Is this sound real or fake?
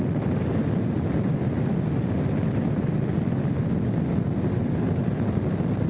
real